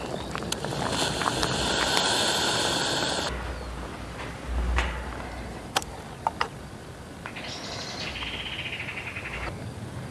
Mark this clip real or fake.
real